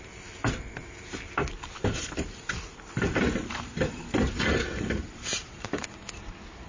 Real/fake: fake